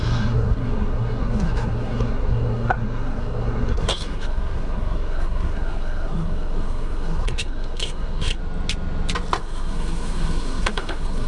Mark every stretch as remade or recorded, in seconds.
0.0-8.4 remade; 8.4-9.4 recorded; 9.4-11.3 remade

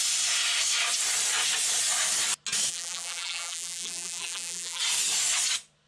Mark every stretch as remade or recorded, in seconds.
0.0-2.7 recorded; 2.7-4.8 remade; 4.8-5.9 recorded

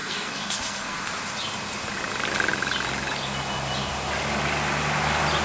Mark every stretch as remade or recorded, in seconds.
0.0-1.0 remade; 1.0-5.4 recorded

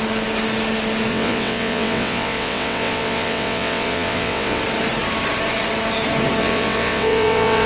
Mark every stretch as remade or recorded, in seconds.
0.0-1.1 recorded; 1.1-4.6 remade; 4.6-6.4 recorded; 6.4-7.7 remade